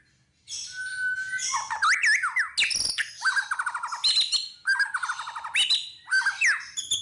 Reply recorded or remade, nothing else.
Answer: recorded